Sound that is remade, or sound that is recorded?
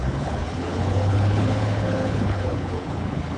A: remade